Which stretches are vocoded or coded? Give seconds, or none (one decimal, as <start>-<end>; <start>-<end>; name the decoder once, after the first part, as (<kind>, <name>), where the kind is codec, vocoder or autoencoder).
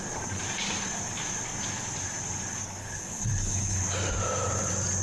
2.8-3.8 (codec, HILCodec)